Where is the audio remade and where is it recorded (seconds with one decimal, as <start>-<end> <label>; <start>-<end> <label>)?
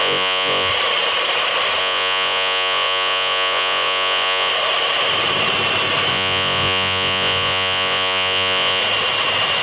0.0-0.7 remade; 0.7-1.8 recorded; 1.8-4.5 remade; 4.5-6.1 recorded; 6.1-8.8 remade; 8.8-9.6 recorded